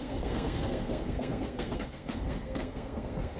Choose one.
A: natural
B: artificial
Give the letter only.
B